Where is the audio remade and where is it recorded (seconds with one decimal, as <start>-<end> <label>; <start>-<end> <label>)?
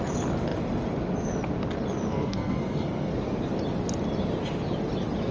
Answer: 0.0-2.1 recorded; 2.1-3.1 remade; 3.1-5.3 recorded